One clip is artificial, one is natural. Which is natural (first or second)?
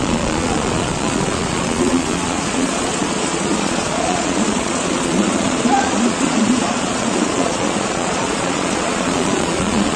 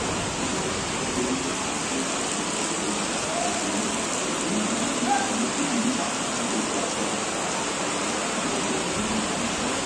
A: second